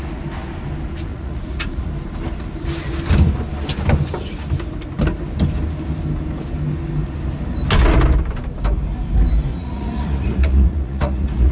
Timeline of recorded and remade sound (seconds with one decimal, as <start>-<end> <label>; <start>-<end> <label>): 0.0-1.1 recorded; 1.1-1.9 remade; 1.9-9.5 recorded; 9.5-11.5 remade